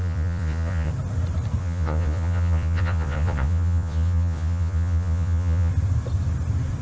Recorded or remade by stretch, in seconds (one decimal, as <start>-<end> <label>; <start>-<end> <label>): 0.0-0.9 remade; 0.9-1.6 recorded; 1.6-5.7 remade; 5.7-6.8 recorded